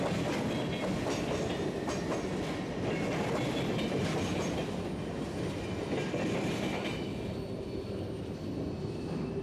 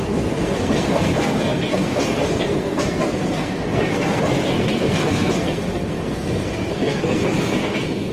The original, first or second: first